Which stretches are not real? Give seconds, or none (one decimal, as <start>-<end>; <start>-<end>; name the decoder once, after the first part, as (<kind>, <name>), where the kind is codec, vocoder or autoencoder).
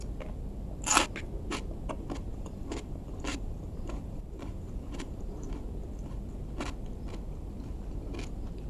2.3-5.5 (vocoder, BigVGAN v2)